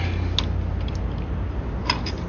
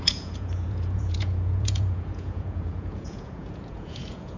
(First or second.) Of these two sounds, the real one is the first